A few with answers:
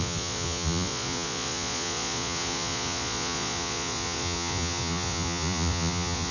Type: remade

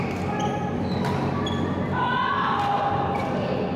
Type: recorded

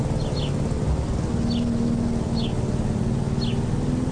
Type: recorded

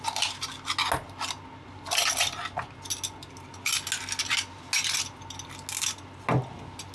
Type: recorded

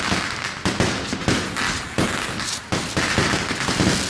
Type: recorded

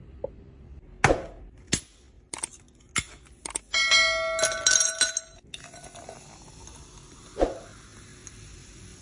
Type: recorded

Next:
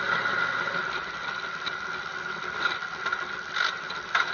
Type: recorded